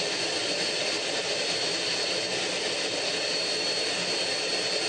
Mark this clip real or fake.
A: real